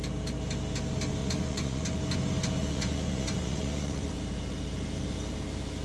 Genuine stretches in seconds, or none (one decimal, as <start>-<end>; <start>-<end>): 0.0-1.2; 2.0-2.6; 4.1-5.8